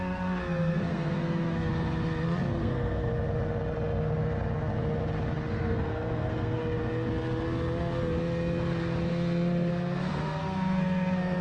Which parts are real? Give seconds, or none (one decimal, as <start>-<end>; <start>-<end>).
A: 1.7-2.6; 3.1-5.5; 6.6-9.7